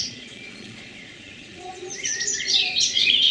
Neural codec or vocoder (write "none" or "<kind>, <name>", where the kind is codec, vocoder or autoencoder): vocoder, Vocos